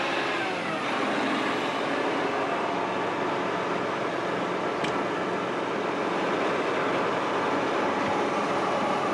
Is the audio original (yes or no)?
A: yes